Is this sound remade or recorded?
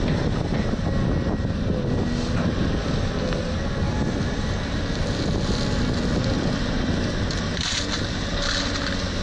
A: recorded